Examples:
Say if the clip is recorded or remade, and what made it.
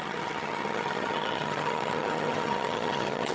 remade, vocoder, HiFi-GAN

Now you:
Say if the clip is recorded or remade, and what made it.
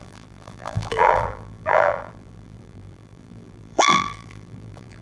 remade, vocoder, BigVGAN v2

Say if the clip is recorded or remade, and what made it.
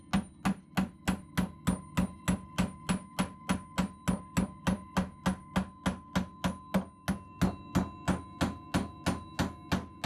recorded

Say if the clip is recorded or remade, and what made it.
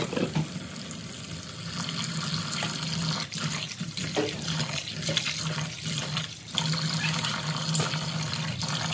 recorded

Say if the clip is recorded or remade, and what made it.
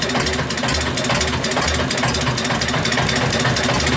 recorded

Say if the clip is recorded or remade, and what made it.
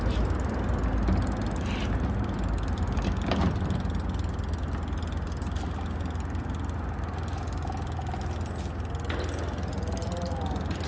recorded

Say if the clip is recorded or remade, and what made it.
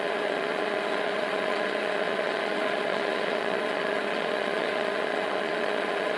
remade, vocoder, Vocos